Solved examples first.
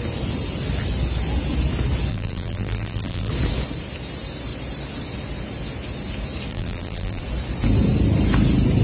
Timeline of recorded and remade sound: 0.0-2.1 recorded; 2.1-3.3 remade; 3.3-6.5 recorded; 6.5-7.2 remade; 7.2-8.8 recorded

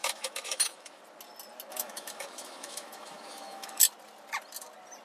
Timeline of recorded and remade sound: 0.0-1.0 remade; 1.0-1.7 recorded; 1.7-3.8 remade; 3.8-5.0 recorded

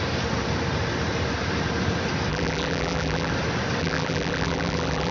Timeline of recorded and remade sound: 0.0-2.3 recorded; 2.3-3.3 remade; 3.3-3.8 recorded; 3.8-5.1 remade

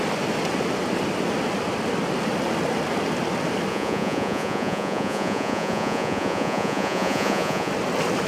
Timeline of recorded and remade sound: 0.0-3.7 recorded; 3.7-7.7 remade; 7.7-8.3 recorded